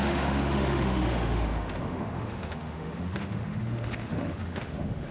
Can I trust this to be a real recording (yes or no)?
no